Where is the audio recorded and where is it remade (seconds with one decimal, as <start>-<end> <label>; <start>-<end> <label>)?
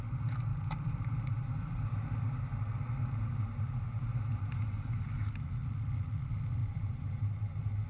0.0-0.5 recorded; 0.5-2.2 remade; 2.2-4.3 recorded; 4.3-4.9 remade; 4.9-6.6 recorded; 6.6-7.3 remade; 7.3-7.9 recorded